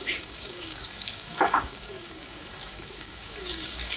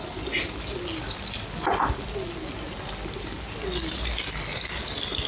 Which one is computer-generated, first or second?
first